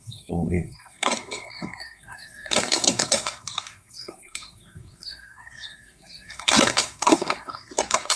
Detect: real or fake fake